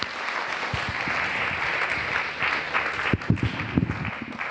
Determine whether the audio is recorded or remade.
recorded